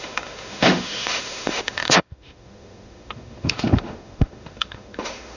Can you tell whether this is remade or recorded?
remade